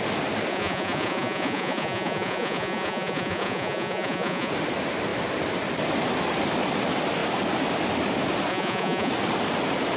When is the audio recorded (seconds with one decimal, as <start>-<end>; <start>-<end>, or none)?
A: 0.0-0.5; 4.5-8.5; 9.1-10.0